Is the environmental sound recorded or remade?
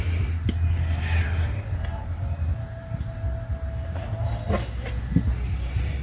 recorded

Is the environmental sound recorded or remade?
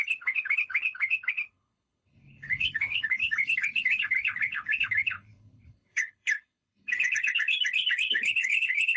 remade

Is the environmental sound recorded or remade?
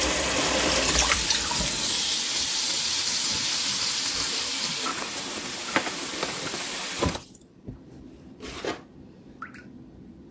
remade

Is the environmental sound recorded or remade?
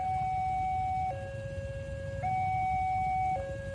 recorded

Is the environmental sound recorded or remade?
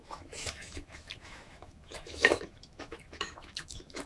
remade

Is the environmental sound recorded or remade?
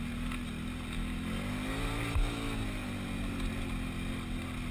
recorded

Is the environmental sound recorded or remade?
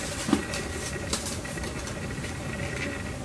recorded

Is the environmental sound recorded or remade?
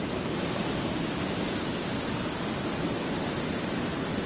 recorded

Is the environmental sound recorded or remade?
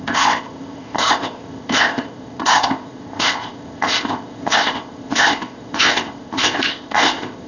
remade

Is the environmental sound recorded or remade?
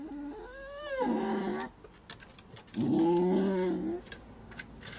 recorded